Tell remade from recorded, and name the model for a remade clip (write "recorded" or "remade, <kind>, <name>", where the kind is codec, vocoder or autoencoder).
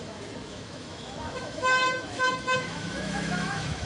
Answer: remade, autoencoder, DAC-VAE